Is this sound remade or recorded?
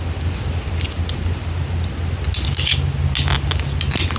recorded